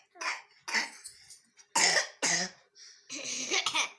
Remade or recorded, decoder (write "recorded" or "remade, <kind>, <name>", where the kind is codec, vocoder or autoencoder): recorded